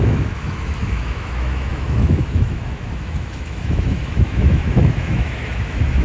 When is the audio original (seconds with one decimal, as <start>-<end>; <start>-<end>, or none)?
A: none